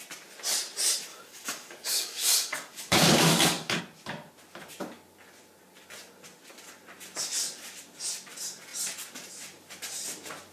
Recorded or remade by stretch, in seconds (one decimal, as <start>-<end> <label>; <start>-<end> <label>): 0.0-1.1 recorded; 1.1-3.8 remade; 3.8-10.5 recorded